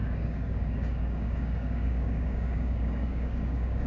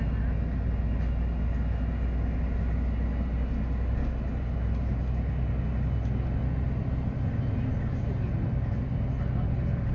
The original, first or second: second